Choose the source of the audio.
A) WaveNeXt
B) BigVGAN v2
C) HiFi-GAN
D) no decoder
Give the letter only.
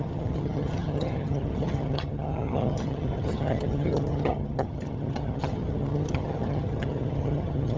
C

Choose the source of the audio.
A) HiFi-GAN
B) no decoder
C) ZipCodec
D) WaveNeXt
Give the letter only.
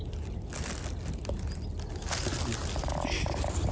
B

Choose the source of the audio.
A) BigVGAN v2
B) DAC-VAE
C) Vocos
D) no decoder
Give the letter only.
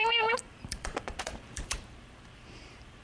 A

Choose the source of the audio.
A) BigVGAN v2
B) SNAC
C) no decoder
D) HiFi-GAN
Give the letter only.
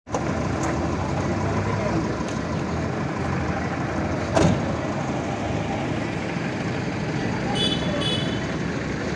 C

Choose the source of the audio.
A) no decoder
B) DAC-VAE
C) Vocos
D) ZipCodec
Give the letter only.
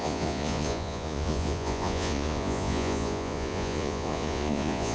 C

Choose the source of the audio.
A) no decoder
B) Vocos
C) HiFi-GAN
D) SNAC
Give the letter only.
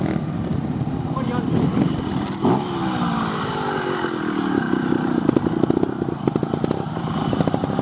A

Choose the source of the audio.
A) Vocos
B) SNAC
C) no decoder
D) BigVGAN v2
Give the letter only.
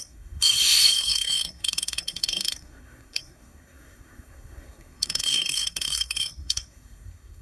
B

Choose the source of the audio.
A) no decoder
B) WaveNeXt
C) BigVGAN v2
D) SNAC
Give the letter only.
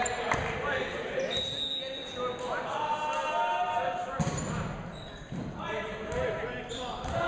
A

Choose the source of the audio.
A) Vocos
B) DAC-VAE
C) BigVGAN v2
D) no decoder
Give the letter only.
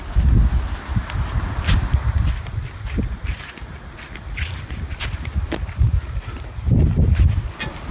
D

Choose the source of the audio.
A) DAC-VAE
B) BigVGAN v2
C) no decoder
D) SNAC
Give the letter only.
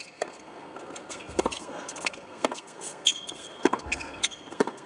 D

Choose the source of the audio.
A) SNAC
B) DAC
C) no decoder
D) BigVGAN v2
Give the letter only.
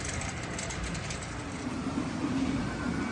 D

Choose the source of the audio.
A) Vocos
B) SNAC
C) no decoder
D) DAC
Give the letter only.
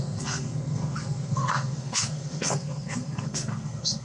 B